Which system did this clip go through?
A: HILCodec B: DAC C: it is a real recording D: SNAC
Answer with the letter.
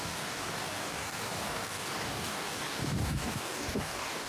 B